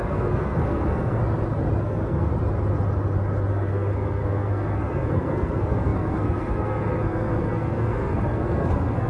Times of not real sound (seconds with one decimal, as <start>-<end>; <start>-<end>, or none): 0.0-1.2; 1.8-2.3; 3.5-9.1